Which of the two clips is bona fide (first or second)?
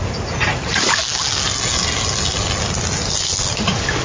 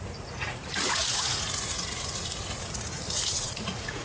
first